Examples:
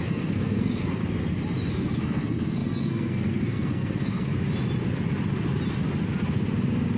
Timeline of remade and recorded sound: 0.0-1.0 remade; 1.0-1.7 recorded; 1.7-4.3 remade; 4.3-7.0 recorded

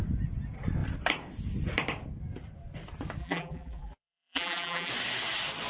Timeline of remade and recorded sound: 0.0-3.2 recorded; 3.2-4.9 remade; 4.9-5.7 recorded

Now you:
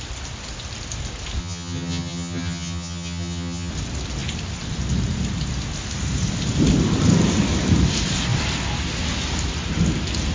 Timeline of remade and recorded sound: 0.0-1.4 recorded; 1.4-3.7 remade; 3.7-10.3 recorded